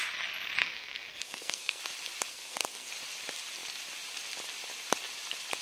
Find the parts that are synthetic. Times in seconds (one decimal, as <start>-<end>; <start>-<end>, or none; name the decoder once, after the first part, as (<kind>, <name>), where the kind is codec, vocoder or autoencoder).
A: 0.6-1.8 (codec, SNAC); 2.3-2.9